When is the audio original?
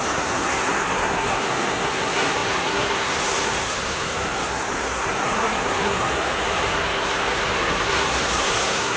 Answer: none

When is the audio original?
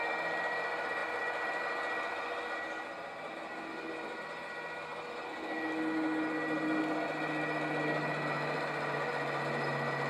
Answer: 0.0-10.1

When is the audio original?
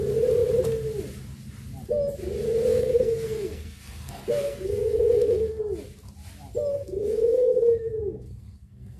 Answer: 0.0-2.7; 5.6-6.7